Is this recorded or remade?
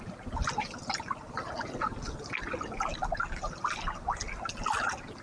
recorded